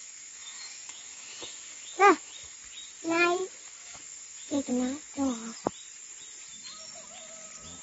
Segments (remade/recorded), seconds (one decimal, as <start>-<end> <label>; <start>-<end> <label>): 0.0-2.6 remade; 2.6-3.8 recorded; 3.8-4.7 remade; 4.7-7.8 recorded